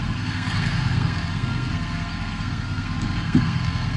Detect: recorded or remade remade